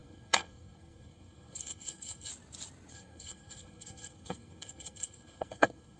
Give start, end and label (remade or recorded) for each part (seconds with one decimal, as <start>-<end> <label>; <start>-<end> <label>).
0.0-2.3 remade; 2.3-2.9 recorded; 2.9-6.0 remade